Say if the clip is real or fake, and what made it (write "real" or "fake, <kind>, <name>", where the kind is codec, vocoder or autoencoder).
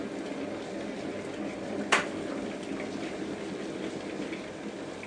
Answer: real